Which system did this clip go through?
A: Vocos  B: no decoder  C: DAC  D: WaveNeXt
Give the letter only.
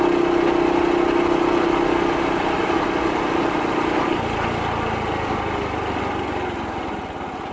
B